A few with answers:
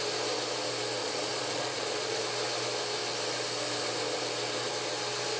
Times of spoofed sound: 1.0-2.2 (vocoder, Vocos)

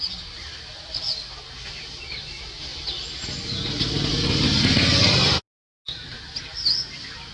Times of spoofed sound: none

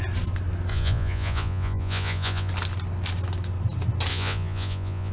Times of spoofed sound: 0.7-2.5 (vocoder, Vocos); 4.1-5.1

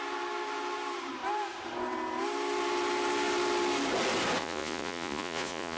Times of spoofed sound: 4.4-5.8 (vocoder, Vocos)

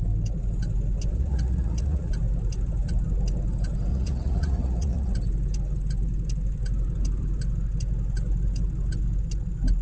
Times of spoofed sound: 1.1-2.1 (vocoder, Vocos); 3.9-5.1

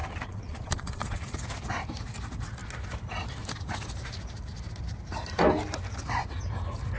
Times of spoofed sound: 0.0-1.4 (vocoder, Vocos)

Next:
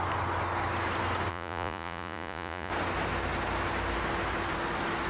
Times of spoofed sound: 1.3-2.7 (vocoder, Vocos)

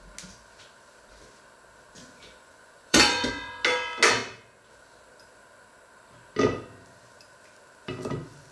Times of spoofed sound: 2.0-3.3 (vocoder, Vocos)